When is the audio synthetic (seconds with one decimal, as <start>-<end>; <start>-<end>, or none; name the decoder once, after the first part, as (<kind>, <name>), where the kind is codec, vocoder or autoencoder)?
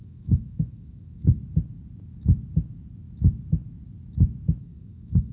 0.0-1.4 (codec, SNAC); 4.6-5.3